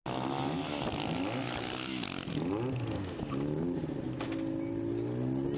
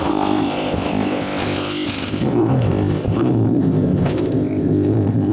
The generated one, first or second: second